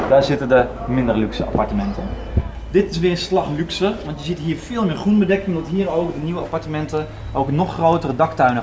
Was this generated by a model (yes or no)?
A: no